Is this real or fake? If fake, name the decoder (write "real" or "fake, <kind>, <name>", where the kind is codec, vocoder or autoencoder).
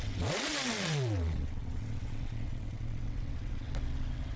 fake, vocoder, WaveNeXt